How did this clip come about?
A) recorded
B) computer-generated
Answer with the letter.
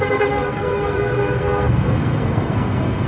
B